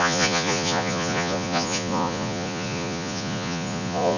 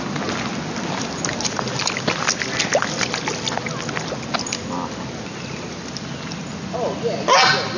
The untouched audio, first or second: second